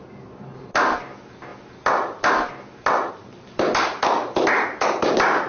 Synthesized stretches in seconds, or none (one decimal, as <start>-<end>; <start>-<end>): none